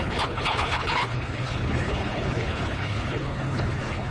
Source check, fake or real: fake